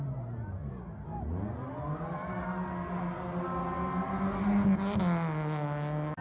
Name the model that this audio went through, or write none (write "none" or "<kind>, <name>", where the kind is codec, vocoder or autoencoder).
none